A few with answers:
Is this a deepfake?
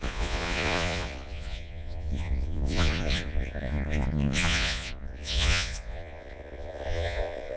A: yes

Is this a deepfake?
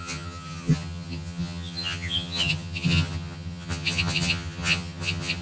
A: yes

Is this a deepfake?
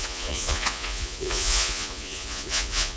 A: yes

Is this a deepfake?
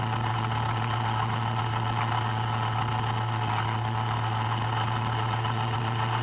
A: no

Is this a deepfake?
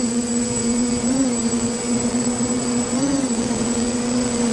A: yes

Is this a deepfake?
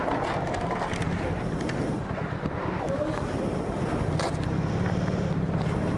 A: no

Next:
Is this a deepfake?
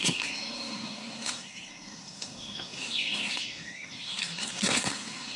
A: yes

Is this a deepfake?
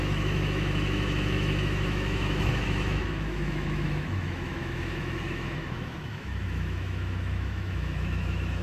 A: yes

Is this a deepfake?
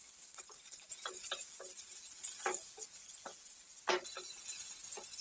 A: no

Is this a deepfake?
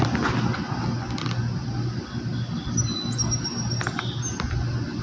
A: no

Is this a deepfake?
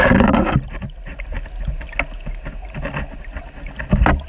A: no